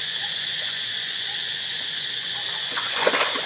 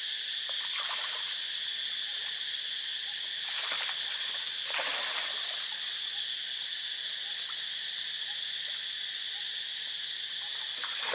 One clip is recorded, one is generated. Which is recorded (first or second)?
second